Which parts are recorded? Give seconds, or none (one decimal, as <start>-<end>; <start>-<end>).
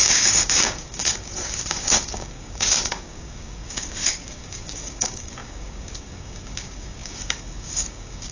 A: none